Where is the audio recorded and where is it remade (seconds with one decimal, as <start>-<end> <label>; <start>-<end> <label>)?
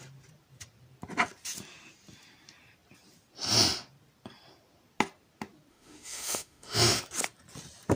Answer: 0.0-5.7 recorded; 5.7-7.0 remade; 7.0-8.0 recorded